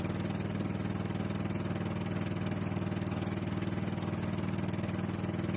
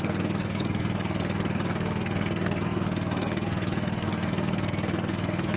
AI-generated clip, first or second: second